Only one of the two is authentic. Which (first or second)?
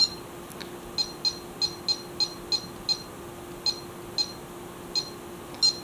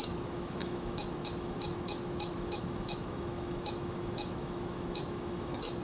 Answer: first